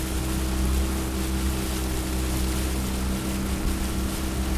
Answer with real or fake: real